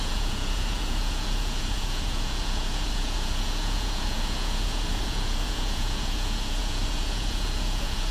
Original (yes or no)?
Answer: no